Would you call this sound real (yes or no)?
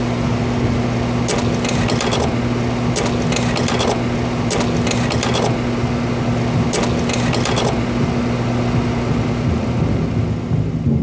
yes